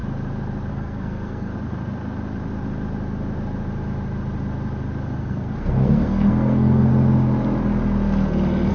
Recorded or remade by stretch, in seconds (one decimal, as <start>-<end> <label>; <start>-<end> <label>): 0.0-0.7 recorded; 0.7-1.5 remade; 1.5-5.2 recorded; 5.2-6.9 remade; 6.9-8.7 recorded

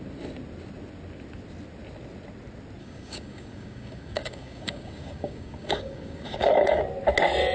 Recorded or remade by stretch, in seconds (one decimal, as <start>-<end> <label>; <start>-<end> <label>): 0.0-2.8 recorded; 2.8-6.8 remade; 6.8-7.5 recorded

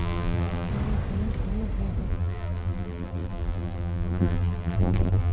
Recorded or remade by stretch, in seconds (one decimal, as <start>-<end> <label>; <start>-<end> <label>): 0.0-0.7 remade; 0.7-2.1 recorded; 2.1-5.3 remade

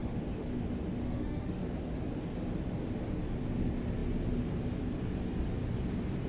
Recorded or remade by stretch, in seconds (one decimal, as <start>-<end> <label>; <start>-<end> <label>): 0.0-0.6 remade; 0.6-1.0 recorded; 1.0-1.6 remade; 1.6-6.3 recorded